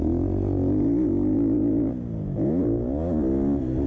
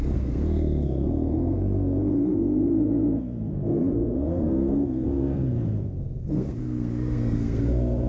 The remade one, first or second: second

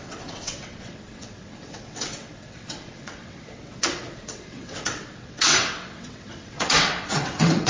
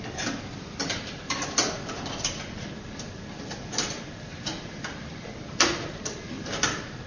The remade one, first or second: first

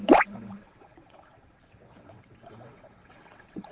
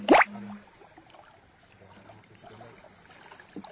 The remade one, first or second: first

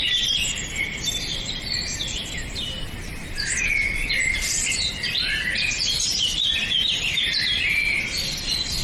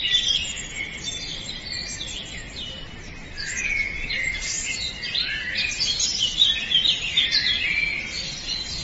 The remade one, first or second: first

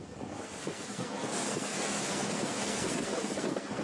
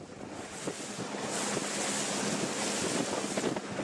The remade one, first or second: first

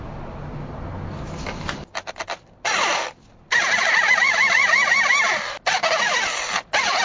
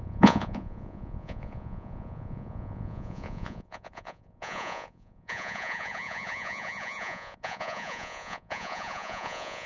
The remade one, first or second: second